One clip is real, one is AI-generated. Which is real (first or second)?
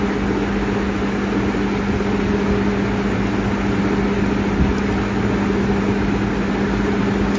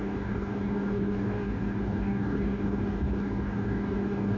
first